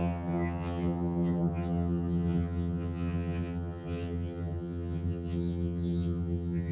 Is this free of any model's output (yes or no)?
no